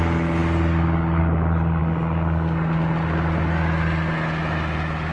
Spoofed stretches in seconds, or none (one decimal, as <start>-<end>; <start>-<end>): none